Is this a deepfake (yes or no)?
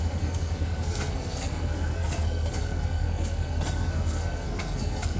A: yes